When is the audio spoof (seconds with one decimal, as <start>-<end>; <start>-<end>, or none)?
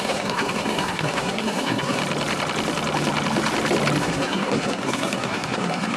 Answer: 0.0-2.0; 4.0-6.0